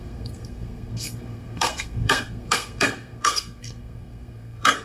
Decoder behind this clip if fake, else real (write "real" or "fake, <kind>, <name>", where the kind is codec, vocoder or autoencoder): fake, codec, SNAC